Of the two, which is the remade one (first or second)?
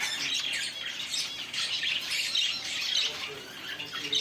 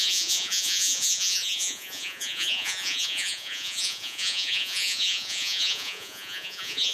second